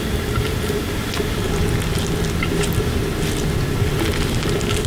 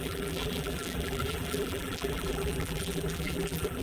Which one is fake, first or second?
second